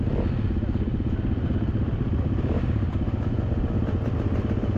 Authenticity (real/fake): real